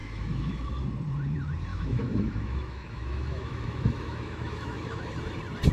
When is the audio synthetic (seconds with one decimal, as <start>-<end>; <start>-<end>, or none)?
0.0-0.7; 1.7-5.1